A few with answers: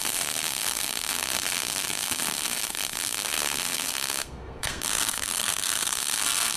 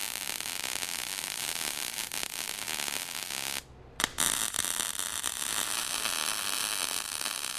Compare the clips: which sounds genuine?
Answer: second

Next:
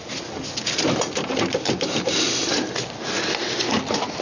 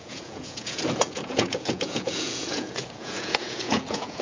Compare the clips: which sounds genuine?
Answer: first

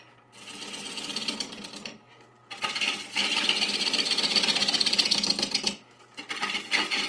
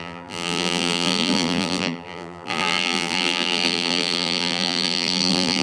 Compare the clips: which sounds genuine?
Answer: first